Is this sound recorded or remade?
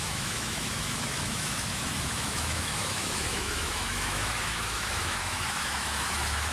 remade